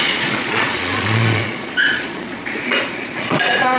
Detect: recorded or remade remade